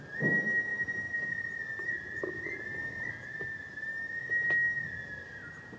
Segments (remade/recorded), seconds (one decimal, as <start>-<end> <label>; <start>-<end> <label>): 0.0-5.8 recorded